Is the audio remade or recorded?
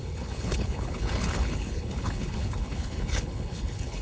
remade